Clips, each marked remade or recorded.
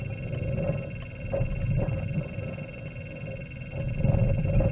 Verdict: recorded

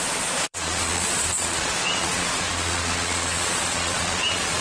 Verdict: remade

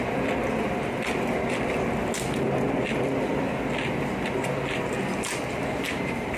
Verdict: recorded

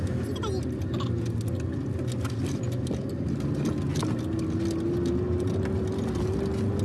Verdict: recorded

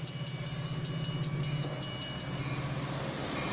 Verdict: recorded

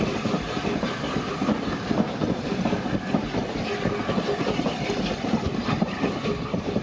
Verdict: recorded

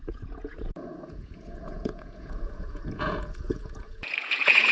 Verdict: remade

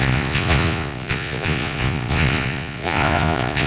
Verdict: remade